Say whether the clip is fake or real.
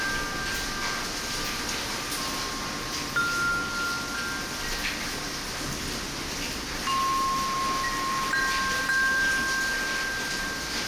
real